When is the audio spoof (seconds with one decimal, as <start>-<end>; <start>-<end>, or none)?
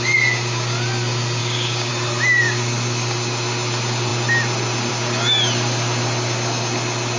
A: 1.4-1.9